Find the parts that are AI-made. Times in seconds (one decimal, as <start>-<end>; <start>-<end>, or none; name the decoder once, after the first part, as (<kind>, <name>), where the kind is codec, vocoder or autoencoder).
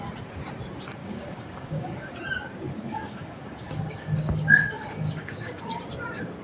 1.0-2.1 (codec, DAC); 2.9-5.6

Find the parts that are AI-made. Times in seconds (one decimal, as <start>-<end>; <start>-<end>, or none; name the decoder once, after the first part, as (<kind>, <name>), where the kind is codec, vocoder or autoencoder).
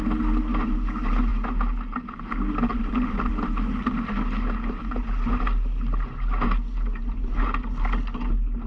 2.7-3.3 (vocoder, BigVGAN v2)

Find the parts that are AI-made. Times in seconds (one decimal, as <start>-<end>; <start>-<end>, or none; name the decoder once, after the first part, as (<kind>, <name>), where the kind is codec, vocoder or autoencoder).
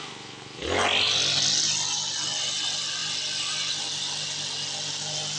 none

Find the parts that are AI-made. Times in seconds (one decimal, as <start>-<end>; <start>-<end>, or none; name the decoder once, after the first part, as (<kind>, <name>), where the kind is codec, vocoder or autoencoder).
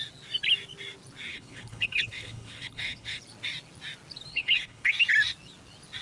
1.3-3.2 (codec, HILCodec); 4.3-4.9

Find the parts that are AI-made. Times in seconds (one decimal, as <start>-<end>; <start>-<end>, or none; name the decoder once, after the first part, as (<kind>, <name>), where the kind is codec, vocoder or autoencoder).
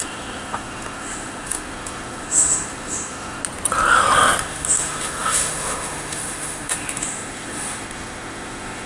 0.0-3.4 (autoencoder, DAC-VAE); 4.4-8.9